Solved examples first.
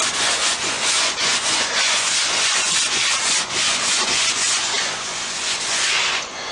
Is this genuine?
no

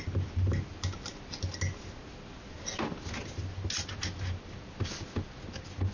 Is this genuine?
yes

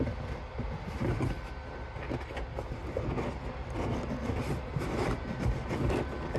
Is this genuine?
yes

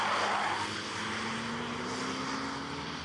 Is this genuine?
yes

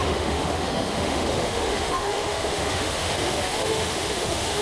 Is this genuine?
no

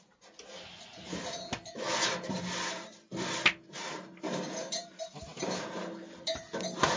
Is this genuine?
yes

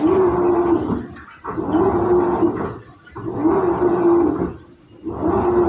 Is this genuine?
yes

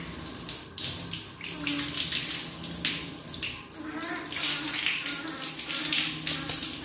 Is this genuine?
yes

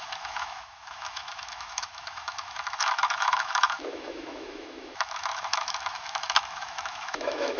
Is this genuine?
no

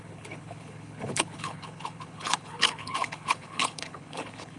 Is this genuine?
no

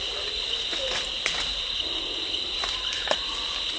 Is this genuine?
yes